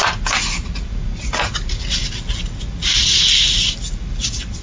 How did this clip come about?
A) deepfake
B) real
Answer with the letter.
B